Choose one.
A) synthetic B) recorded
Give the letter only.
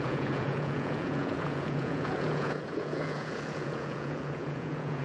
A